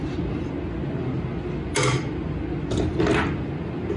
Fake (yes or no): no